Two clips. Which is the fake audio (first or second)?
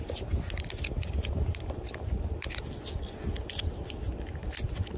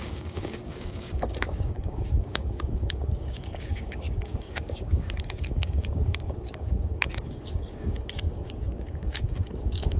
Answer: second